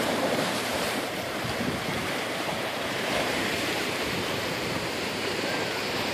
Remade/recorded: remade